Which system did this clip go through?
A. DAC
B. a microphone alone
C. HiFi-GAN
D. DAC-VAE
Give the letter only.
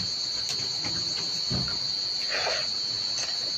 B